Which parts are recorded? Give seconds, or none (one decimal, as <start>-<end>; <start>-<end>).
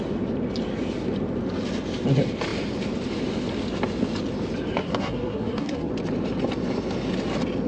0.0-4.8; 5.9-7.7